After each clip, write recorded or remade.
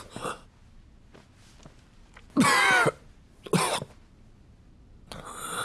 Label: recorded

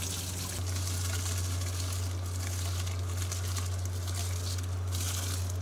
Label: recorded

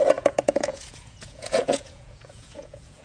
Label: remade